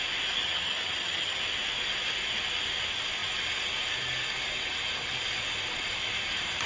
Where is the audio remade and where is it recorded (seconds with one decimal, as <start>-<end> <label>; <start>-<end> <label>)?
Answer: 0.0-0.4 recorded; 0.4-1.4 remade; 1.4-6.7 recorded